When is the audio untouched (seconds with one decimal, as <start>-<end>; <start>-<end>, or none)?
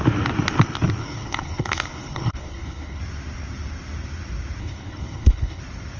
0.0-1.0; 3.0-4.6; 5.6-6.0